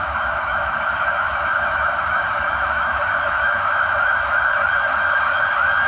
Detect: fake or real fake